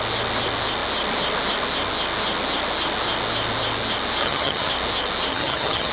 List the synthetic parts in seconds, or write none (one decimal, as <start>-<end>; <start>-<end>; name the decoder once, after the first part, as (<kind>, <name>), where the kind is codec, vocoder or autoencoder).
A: 4.2-4.7 (vocoder, HiFi-GAN); 5.3-5.9